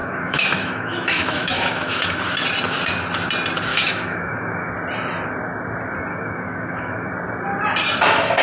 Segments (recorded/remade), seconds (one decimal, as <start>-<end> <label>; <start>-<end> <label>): 0.0-2.2 remade; 2.2-3.7 recorded; 3.7-4.7 remade; 4.7-6.1 recorded; 6.1-7.1 remade; 7.1-8.4 recorded